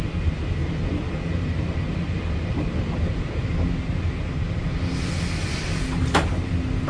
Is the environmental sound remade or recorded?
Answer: recorded